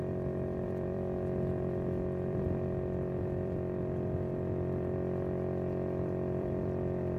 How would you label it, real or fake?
fake